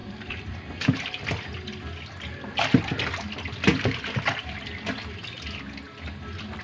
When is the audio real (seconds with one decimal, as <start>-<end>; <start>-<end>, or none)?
1.8-3.7; 5.2-6.6